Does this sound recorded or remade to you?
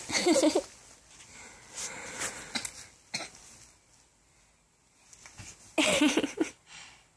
recorded